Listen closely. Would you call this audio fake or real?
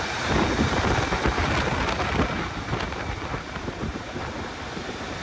real